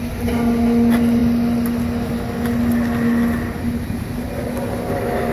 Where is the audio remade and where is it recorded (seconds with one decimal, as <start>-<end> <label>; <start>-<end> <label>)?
0.0-5.3 recorded